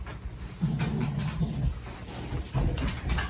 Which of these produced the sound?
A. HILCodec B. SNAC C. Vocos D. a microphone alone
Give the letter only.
D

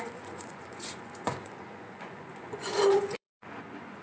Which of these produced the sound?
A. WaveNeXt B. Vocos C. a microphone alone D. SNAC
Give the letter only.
B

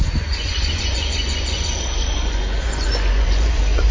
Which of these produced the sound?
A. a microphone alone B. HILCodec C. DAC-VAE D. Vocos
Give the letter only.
D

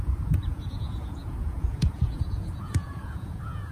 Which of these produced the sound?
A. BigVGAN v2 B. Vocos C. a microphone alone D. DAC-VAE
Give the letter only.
B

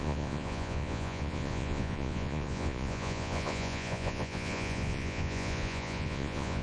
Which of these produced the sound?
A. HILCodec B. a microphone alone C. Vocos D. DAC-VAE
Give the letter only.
C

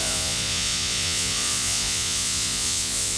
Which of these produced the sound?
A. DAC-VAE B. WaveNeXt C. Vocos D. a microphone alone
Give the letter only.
C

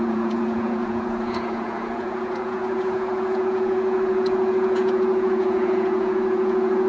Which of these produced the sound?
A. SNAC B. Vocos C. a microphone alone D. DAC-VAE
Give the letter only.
B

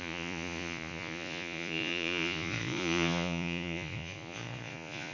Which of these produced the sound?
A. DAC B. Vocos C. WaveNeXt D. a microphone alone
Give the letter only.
B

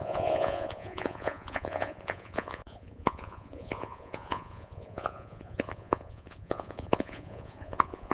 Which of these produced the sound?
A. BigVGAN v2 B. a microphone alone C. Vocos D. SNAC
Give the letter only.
C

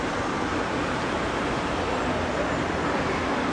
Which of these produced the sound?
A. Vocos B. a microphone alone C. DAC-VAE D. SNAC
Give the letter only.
B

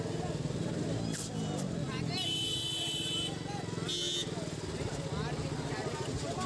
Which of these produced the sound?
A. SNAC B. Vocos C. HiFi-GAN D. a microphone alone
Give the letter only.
D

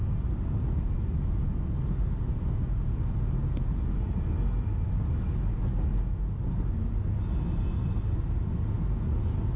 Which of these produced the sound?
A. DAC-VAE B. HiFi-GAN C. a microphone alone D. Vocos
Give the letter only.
C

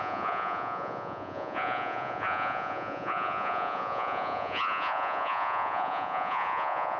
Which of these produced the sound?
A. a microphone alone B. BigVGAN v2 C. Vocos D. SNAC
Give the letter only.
C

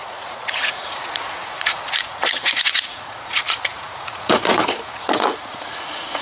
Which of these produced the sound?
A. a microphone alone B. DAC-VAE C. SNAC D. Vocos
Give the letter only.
D